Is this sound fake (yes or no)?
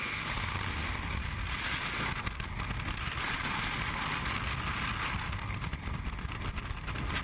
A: no